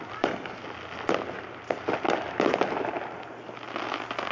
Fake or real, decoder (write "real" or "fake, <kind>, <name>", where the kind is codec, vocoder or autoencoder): real